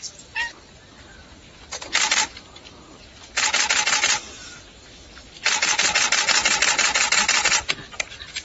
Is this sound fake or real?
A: real